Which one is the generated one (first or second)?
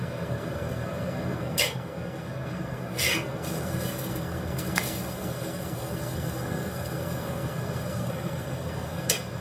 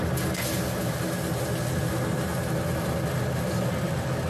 first